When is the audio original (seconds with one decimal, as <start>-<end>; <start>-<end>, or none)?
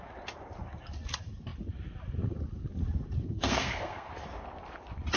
0.0-3.2; 4.1-5.2